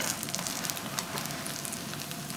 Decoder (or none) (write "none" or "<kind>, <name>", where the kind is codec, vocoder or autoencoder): none